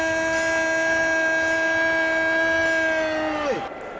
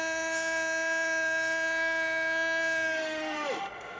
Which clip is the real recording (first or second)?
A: first